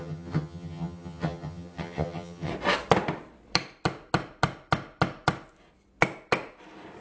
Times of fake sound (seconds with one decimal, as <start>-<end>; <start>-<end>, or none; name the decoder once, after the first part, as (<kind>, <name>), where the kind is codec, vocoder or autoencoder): 0.0-2.5 (vocoder, HiFi-GAN)